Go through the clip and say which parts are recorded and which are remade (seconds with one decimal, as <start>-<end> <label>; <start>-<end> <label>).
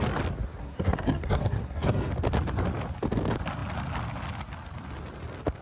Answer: 0.0-0.6 recorded; 0.6-2.1 remade; 2.1-5.6 recorded